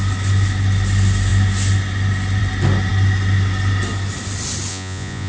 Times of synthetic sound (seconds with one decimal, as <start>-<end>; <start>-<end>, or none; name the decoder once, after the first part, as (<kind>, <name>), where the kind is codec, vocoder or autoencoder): 4.7-5.3 (vocoder, Vocos)